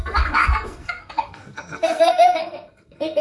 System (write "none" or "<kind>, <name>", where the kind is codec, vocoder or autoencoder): codec, SNAC